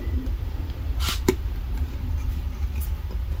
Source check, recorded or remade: remade